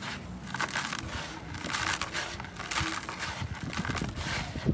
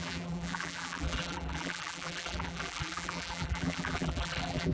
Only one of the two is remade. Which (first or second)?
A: second